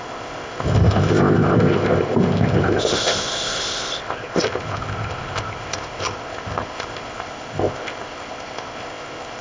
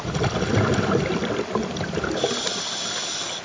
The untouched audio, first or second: second